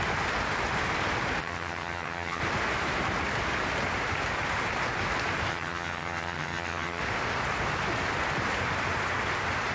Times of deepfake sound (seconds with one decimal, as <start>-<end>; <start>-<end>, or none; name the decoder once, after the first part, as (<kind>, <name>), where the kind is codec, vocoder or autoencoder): 1.4-2.4 (vocoder, HiFi-GAN); 5.5-7.0